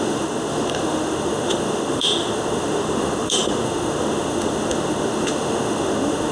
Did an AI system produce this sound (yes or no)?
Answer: yes